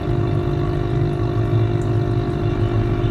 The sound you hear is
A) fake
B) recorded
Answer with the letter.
B